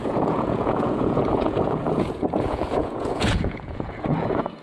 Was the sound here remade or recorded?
remade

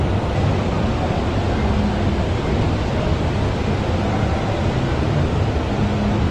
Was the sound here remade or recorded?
recorded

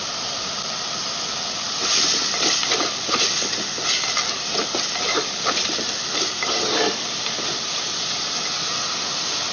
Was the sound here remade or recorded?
recorded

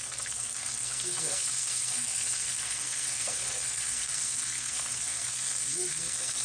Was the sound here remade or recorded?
remade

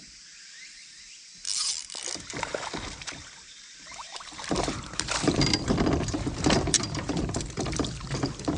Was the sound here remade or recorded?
remade